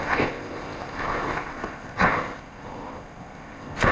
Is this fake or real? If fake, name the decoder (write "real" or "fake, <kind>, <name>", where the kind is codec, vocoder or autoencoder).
fake, codec, ZipCodec